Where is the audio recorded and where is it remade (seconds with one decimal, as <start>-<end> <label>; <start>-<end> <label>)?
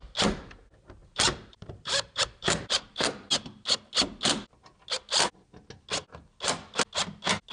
0.0-1.0 recorded; 1.0-3.3 remade; 3.3-7.5 recorded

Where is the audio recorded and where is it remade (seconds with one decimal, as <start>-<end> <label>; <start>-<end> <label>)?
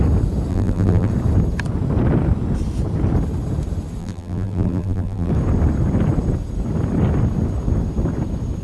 0.0-0.5 recorded; 0.5-1.1 remade; 1.1-4.0 recorded; 4.0-5.3 remade; 5.3-8.6 recorded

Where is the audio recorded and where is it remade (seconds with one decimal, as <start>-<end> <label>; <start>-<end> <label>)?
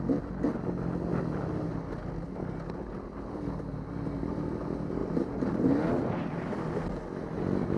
0.0-5.0 recorded; 5.0-6.4 remade; 6.4-7.8 recorded